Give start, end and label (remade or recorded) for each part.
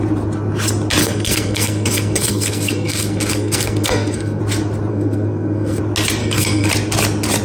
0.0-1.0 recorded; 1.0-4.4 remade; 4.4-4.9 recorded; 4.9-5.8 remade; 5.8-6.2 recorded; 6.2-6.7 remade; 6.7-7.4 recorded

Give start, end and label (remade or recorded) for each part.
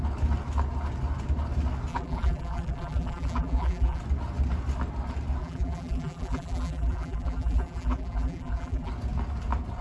0.0-1.9 recorded; 1.9-4.0 remade; 4.0-5.4 recorded; 5.4-8.9 remade; 8.9-9.8 recorded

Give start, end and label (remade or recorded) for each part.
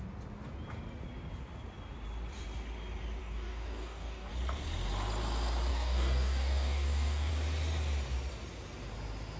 0.0-3.2 recorded; 3.2-4.3 remade; 4.3-5.7 recorded; 5.7-7.3 remade; 7.3-9.4 recorded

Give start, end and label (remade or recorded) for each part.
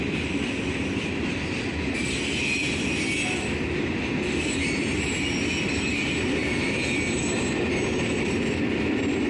0.0-9.3 recorded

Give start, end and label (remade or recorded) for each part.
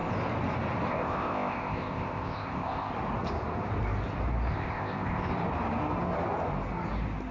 0.0-0.9 recorded; 0.9-2.9 remade; 2.9-4.5 recorded; 4.5-5.3 remade; 5.3-7.3 recorded